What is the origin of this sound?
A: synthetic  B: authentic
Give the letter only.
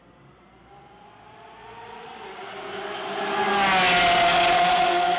B